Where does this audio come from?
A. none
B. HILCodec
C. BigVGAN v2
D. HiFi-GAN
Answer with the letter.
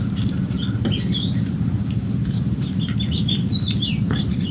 C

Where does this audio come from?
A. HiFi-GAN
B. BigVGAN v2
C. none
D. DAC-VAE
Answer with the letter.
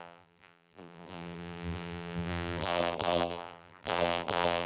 B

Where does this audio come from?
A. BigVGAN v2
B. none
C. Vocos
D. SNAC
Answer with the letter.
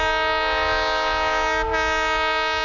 B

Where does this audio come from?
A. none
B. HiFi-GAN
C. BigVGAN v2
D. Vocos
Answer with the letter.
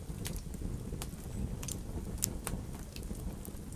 A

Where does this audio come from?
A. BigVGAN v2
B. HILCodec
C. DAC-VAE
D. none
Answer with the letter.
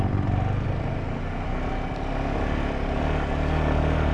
D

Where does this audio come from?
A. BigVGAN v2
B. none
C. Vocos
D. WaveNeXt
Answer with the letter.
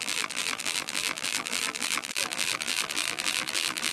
A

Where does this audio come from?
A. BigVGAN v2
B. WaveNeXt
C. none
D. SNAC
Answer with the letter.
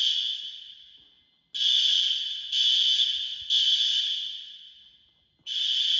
C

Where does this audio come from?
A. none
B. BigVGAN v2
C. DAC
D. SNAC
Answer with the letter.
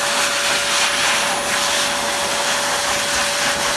A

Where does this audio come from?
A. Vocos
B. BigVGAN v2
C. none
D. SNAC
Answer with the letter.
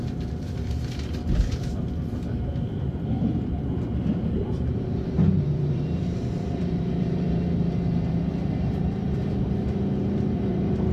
B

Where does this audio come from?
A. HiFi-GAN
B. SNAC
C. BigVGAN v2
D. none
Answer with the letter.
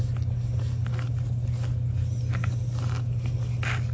D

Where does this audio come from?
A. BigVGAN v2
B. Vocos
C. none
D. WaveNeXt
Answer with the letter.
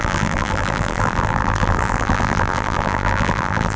A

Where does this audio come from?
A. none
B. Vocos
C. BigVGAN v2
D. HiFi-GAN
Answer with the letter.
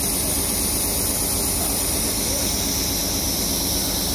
A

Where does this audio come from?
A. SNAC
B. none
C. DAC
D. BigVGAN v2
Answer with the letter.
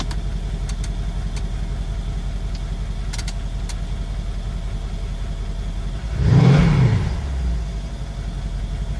B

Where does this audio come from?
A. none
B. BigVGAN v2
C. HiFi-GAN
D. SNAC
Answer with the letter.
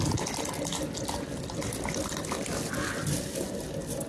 B